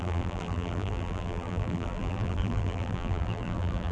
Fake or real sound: fake